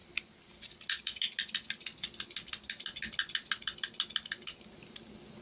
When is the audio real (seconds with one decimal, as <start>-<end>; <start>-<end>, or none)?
0.0-5.4